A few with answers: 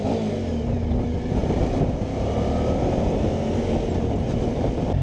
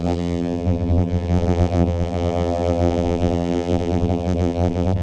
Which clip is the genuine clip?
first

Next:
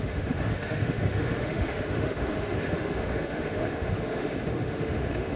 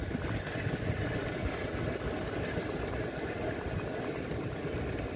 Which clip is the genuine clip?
second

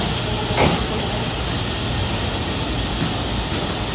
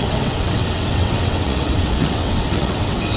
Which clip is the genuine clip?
first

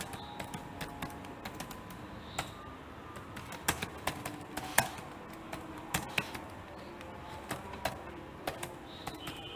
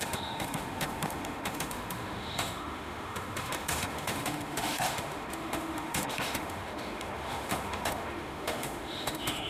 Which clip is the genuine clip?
first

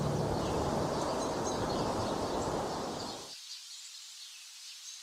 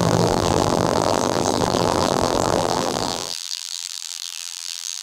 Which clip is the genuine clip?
first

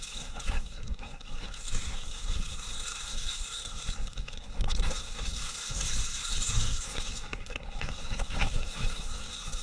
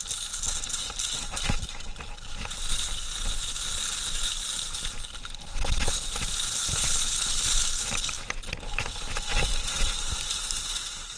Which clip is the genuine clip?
second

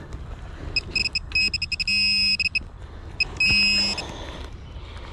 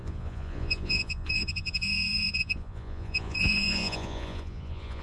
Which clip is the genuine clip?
first